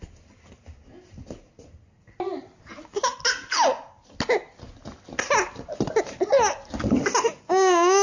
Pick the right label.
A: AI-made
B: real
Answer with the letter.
B